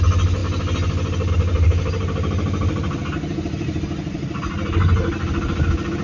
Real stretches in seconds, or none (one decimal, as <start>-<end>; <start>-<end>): 0.0-6.0